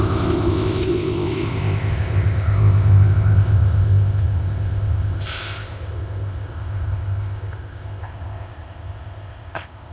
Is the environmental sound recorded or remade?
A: remade